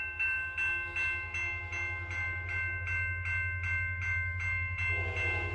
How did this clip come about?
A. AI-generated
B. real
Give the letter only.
B